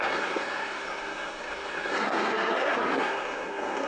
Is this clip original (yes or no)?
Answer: no